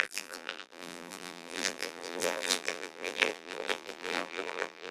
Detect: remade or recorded remade